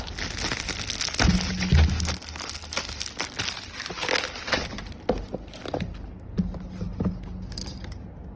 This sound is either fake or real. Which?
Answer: real